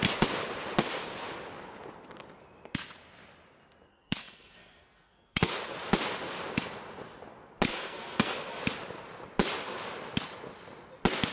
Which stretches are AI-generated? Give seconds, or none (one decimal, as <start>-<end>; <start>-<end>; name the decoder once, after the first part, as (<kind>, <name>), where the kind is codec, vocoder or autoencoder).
3.9-5.5 (codec, SNAC); 7.7-8.6